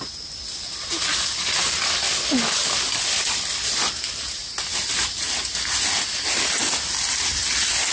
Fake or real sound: real